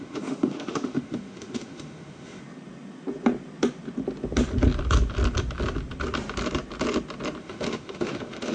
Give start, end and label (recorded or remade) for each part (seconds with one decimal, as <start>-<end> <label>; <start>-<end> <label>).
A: 0.0-2.4 remade; 2.4-7.4 recorded; 7.4-8.5 remade